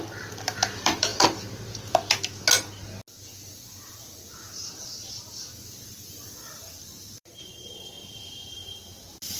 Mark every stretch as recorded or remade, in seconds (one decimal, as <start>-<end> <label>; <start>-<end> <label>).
0.0-1.1 remade; 1.1-5.6 recorded; 5.6-9.4 remade